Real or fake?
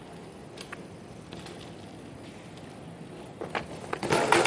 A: real